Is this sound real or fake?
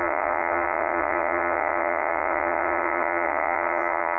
fake